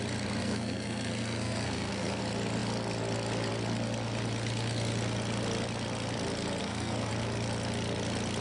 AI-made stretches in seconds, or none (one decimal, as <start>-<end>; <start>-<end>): 0.4-2.2; 6.6-7.1